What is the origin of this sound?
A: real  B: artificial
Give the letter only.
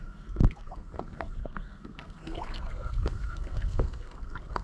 B